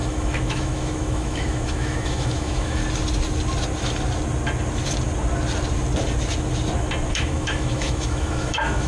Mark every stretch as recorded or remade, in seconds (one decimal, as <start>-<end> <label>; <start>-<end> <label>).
0.0-2.8 remade; 2.8-7.1 recorded; 7.1-8.9 remade